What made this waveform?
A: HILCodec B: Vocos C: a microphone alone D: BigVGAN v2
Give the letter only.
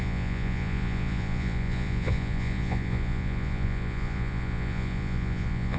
B